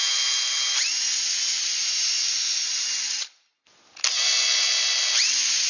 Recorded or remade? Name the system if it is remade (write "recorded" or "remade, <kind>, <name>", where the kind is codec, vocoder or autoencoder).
recorded